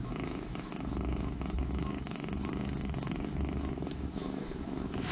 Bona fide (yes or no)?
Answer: no